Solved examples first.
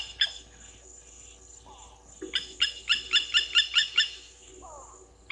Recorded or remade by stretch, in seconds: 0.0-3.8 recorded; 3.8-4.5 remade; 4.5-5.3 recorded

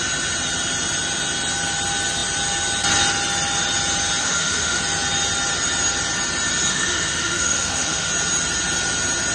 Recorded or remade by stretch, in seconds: 0.0-4.2 recorded; 4.2-4.8 remade; 4.8-6.7 recorded; 6.7-8.1 remade; 8.1-9.3 recorded